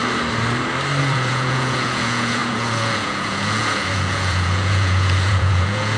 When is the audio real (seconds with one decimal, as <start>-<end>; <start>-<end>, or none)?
0.0-1.0

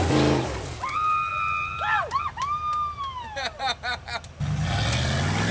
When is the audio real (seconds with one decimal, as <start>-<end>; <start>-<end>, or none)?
0.0-5.5